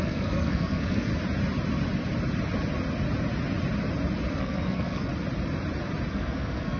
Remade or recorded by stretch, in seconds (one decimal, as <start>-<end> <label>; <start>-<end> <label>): 0.0-1.1 remade; 1.1-4.3 recorded; 4.3-5.1 remade; 5.1-6.1 recorded; 6.1-6.8 remade